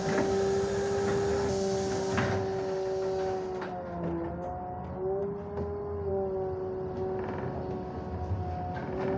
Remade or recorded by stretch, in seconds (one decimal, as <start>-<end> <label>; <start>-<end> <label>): 0.0-9.2 recorded